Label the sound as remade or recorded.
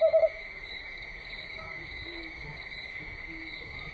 remade